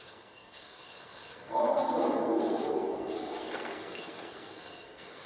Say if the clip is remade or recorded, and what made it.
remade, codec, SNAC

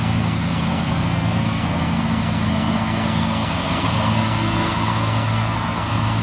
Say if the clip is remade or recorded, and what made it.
remade, codec, SNAC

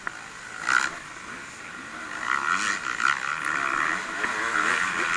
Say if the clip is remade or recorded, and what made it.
recorded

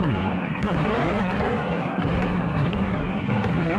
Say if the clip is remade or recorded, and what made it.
remade, codec, SNAC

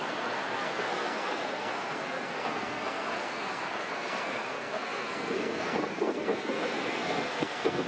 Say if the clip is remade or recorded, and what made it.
remade, codec, SNAC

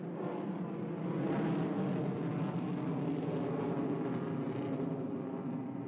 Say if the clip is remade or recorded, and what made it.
recorded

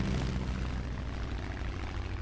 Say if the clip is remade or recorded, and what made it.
recorded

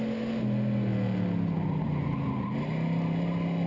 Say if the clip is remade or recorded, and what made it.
recorded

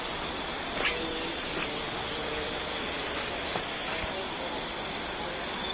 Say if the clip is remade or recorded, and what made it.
recorded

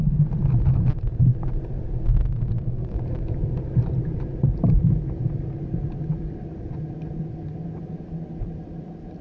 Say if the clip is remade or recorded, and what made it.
recorded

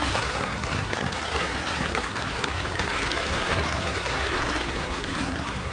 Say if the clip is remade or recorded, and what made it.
remade, codec, SNAC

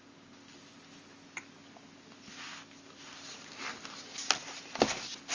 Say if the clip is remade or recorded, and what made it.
recorded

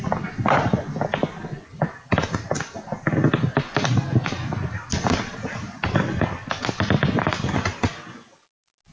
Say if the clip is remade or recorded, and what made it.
recorded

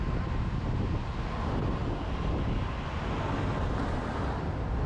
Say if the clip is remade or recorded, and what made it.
recorded